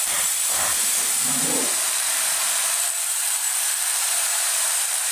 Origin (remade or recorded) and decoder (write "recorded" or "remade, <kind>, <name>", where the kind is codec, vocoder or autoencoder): remade, vocoder, BigVGAN v2